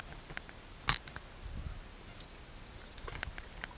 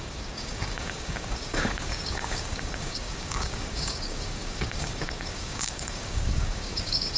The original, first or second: first